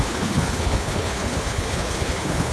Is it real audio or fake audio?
fake